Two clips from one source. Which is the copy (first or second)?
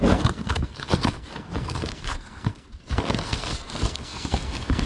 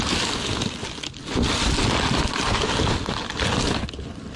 first